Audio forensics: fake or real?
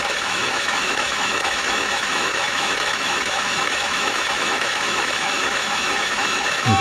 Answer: fake